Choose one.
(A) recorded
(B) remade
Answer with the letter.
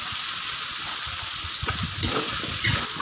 A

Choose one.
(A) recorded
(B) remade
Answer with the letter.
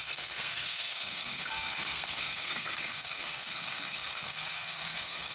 B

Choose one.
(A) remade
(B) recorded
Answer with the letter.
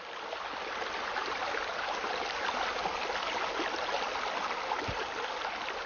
B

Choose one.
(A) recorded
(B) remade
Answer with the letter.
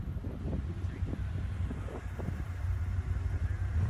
A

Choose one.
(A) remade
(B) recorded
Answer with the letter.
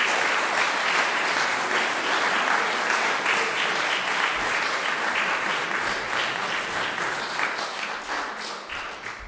B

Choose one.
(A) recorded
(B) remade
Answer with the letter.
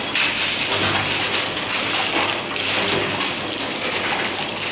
A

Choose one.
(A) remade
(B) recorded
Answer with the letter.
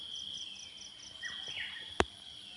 B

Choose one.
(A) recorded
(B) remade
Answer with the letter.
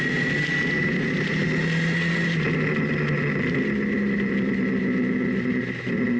A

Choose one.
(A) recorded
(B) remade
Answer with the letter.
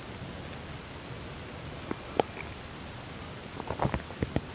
A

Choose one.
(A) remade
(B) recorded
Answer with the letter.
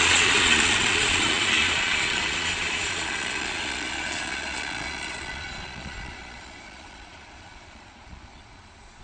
A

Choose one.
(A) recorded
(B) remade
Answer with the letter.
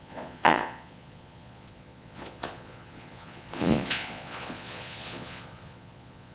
B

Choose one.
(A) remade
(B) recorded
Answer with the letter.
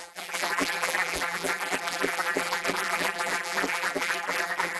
A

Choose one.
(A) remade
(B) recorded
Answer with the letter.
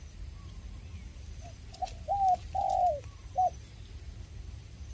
B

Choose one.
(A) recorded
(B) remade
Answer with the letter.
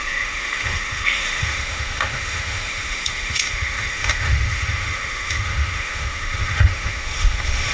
B